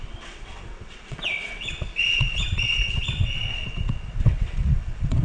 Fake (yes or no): yes